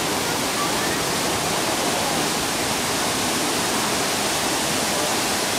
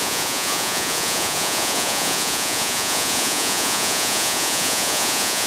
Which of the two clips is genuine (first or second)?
first